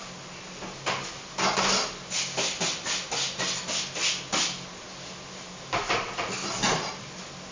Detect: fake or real real